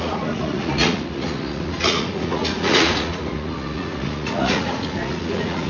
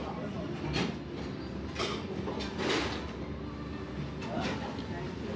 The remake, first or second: first